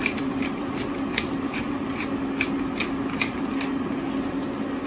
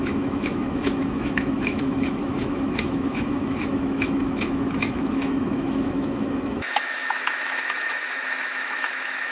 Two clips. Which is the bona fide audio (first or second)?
first